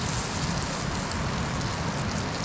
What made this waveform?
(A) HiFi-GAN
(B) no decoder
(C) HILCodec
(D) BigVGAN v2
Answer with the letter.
B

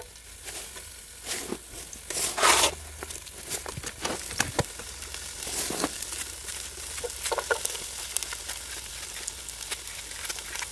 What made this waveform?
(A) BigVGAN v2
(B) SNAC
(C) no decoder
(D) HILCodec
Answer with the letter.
C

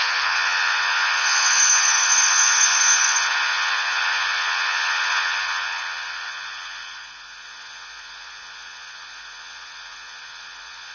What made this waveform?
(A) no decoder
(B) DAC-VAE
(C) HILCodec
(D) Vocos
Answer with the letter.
D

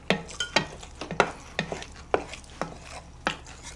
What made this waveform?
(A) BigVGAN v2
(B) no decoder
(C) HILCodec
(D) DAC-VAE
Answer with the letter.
B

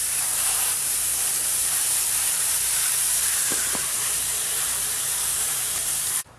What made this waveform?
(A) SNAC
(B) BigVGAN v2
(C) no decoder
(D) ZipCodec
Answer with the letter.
B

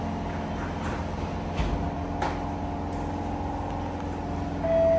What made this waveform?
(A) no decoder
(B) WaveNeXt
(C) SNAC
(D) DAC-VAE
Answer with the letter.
A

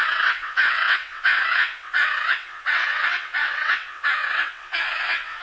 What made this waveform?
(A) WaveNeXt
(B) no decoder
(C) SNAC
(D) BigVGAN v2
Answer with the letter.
A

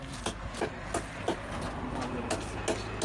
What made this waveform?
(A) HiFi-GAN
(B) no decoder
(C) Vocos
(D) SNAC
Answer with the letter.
B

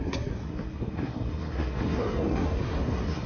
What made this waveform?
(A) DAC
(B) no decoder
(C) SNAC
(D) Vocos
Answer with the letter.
C